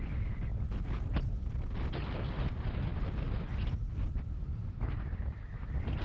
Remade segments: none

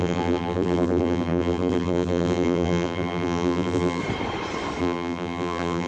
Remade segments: 0.0-4.0; 4.8-5.9